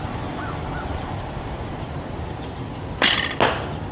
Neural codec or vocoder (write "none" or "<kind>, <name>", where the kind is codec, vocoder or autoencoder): none